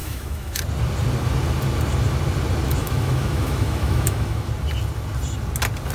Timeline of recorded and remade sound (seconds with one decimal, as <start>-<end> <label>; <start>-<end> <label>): 0.0-0.6 remade; 0.6-2.8 recorded; 2.8-4.5 remade; 4.5-5.9 recorded